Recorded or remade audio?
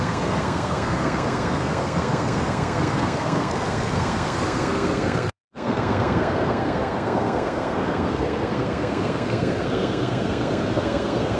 remade